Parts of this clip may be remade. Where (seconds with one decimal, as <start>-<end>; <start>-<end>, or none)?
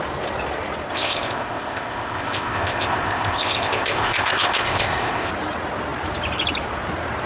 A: 0.9-5.3